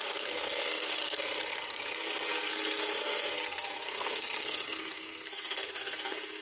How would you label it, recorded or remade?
remade